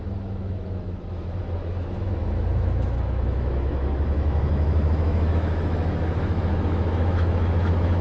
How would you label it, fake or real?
fake